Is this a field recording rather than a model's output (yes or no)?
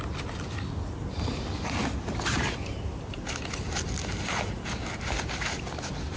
yes